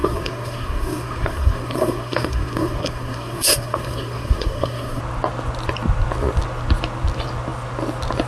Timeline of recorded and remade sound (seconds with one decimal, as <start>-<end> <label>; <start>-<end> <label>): 0.0-5.0 remade; 5.0-8.3 recorded